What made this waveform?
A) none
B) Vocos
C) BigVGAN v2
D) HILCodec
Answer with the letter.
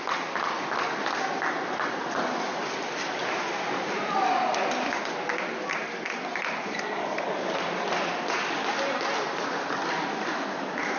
C